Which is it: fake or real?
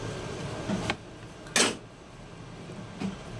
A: real